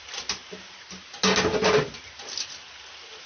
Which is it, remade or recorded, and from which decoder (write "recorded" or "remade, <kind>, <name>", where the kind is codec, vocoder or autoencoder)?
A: recorded